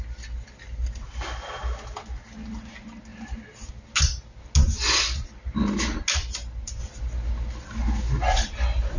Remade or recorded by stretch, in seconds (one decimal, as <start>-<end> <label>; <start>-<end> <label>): 0.0-9.0 recorded